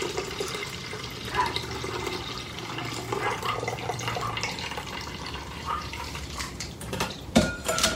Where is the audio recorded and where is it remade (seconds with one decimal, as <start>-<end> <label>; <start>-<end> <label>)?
0.0-0.8 remade; 0.8-5.6 recorded; 5.6-8.0 remade